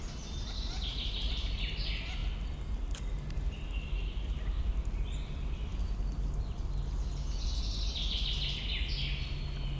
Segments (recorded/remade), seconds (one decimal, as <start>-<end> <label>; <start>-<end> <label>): 0.0-9.8 recorded